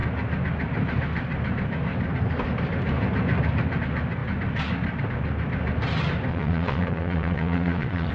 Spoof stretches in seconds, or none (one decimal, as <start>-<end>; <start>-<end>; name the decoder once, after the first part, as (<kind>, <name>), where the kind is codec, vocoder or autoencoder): 6.3-8.1 (vocoder, Vocos)